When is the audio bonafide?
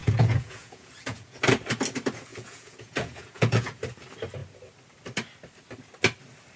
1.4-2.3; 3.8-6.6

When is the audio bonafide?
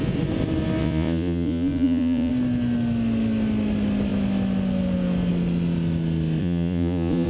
0.0-0.8; 2.3-6.4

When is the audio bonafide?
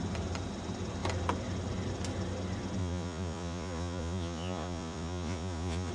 0.0-2.8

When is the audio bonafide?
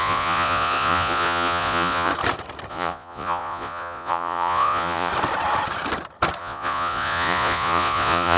2.1-2.7; 5.1-6.4